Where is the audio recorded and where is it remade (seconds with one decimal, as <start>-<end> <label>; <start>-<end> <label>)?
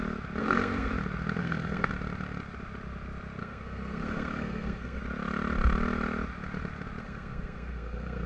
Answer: 0.0-0.4 recorded; 0.4-0.9 remade; 0.9-1.4 recorded; 1.4-1.9 remade; 1.9-3.4 recorded; 3.4-5.0 remade; 5.0-7.0 recorded; 7.0-8.3 remade